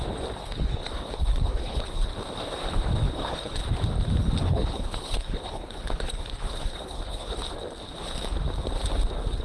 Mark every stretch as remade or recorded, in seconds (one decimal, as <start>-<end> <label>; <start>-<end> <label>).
0.0-0.4 recorded; 0.4-2.1 remade; 2.1-3.0 recorded; 3.0-3.6 remade; 3.6-4.4 recorded; 4.4-7.4 remade; 7.4-9.4 recorded